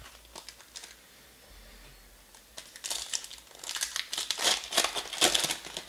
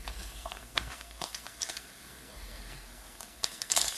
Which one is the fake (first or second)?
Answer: second